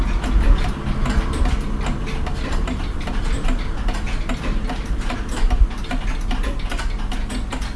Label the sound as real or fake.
real